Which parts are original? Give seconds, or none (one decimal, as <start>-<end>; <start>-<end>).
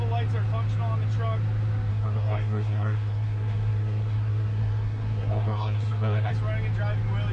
0.0-1.9; 6.3-7.3